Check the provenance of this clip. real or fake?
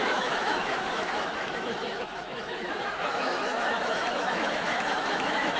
fake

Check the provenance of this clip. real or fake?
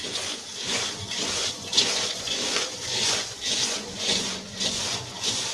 fake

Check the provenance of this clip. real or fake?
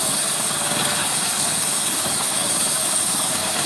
fake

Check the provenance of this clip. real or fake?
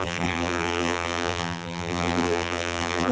fake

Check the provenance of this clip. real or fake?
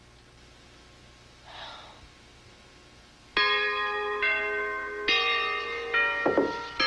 real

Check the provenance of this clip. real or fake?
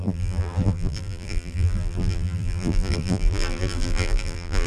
fake